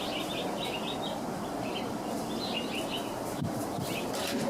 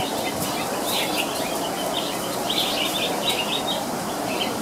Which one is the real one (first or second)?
first